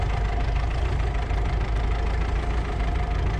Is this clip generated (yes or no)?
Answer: no